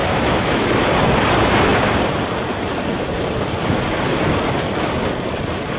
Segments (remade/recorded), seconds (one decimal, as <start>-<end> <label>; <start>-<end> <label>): 0.0-0.7 remade; 0.7-5.8 recorded